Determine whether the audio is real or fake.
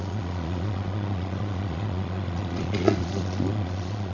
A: fake